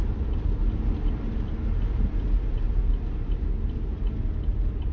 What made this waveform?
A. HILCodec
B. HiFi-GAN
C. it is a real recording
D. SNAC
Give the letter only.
C